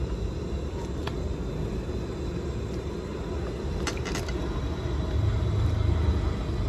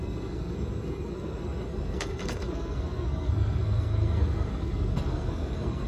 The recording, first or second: first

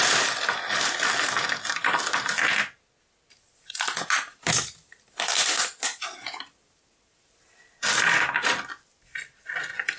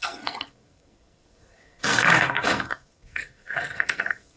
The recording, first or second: first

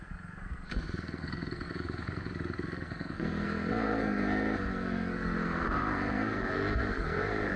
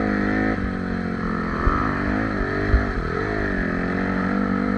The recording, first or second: second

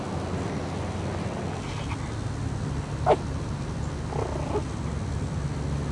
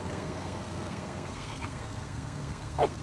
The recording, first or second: first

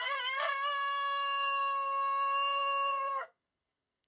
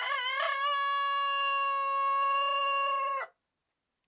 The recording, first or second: second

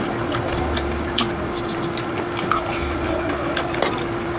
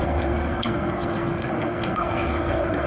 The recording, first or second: first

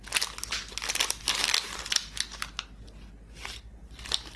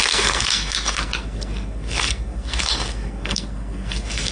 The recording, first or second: first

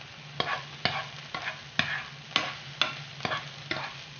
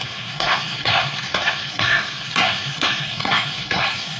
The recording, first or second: first